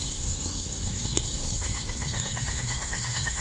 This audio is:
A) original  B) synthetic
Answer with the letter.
B